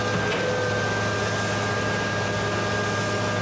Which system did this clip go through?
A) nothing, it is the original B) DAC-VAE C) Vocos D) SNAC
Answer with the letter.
A